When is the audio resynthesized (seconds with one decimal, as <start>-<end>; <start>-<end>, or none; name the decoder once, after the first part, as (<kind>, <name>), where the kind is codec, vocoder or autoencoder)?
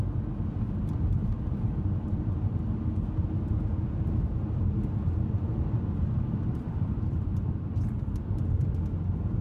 1.2-2.6 (vocoder, BigVGAN v2); 6.5-7.7